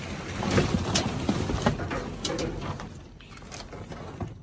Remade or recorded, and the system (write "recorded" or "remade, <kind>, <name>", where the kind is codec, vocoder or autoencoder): recorded